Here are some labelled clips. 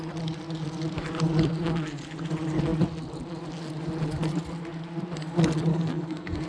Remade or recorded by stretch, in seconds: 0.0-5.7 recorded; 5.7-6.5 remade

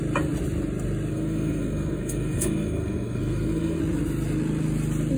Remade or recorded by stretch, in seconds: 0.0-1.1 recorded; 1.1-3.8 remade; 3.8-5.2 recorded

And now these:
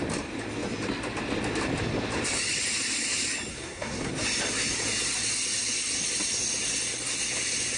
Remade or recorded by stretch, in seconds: 0.0-3.5 recorded; 3.5-4.1 remade; 4.1-7.8 recorded

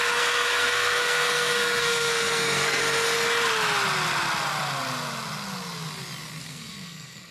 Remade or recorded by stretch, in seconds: 0.0-2.8 remade; 2.8-6.4 recorded; 6.4-7.3 remade

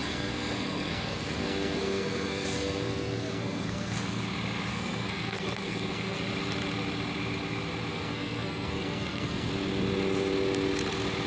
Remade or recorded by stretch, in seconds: 0.0-4.2 remade; 4.2-4.7 recorded; 4.7-6.3 remade; 6.3-7.9 recorded; 7.9-9.5 remade; 9.5-11.3 recorded

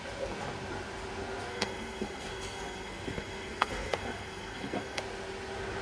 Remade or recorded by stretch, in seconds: 0.0-1.5 recorded; 1.5-5.0 remade; 5.0-5.8 recorded

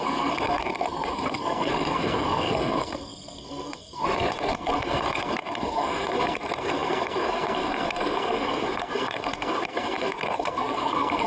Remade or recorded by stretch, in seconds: 0.0-11.3 remade